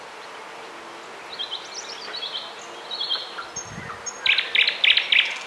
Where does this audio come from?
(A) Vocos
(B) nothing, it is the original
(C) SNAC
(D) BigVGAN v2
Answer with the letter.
B